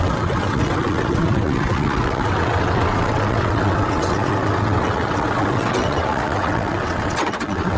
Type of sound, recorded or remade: remade